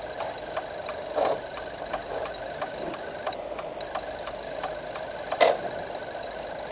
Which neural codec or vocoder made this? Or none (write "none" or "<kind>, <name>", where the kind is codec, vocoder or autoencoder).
none